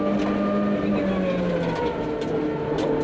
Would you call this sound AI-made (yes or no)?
no